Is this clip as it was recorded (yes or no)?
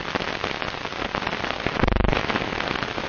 yes